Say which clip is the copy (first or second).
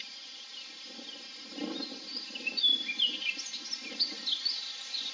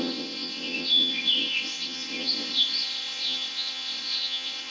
second